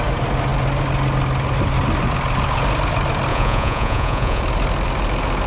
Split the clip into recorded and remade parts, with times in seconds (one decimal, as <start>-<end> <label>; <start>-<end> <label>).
0.0-3.3 recorded; 3.3-4.4 remade; 4.4-5.5 recorded